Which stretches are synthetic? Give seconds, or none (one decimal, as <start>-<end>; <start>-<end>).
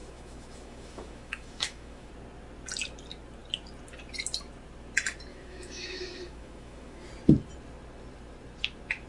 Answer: 0.0-2.1; 5.3-7.1